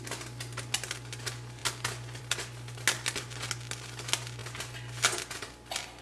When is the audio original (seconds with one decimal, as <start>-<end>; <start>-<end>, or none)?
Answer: 0.0-6.0

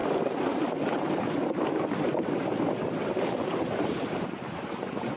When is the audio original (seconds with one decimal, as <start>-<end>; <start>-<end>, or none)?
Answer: 0.0-3.1